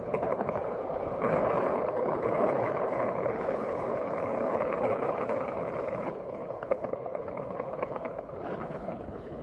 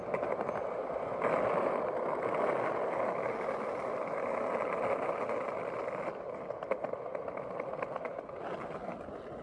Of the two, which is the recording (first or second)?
second